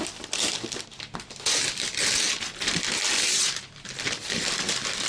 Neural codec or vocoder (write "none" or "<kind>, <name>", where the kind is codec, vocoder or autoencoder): none